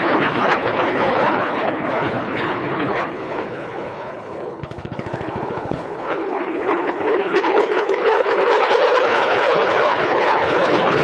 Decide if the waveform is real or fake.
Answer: fake